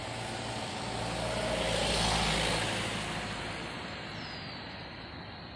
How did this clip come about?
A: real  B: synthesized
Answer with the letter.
A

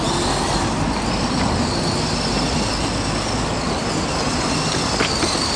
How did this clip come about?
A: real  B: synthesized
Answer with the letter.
A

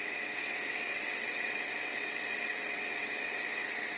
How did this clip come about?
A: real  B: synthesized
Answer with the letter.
B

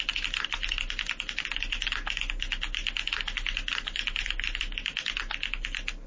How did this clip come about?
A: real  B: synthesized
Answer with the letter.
A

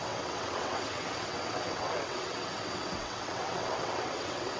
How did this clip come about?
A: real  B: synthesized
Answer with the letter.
B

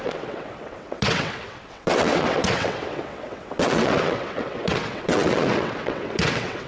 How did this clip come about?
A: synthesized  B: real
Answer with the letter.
A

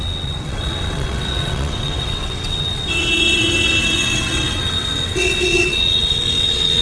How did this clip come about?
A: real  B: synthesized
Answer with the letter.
B